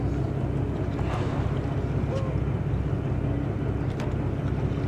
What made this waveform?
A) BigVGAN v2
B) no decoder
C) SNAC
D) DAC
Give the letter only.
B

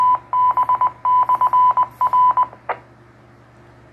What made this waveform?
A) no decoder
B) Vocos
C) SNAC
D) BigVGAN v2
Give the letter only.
A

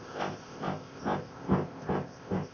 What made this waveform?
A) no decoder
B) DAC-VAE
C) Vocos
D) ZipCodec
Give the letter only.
D